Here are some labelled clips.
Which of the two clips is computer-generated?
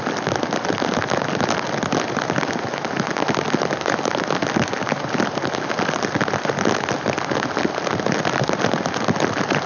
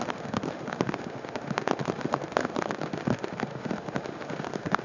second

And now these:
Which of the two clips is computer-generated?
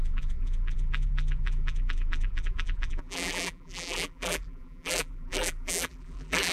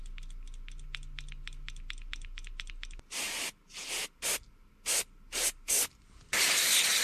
first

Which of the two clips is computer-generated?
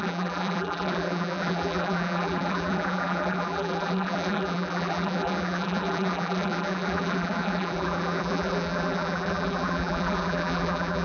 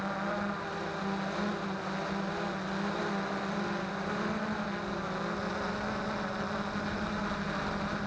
first